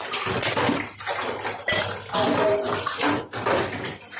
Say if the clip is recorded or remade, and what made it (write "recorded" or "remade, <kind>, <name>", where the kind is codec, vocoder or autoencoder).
recorded